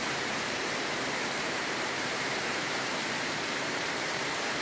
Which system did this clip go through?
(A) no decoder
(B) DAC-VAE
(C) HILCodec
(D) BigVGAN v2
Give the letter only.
D